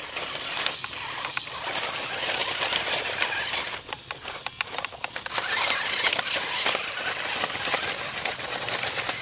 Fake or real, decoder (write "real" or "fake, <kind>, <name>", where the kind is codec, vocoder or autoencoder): real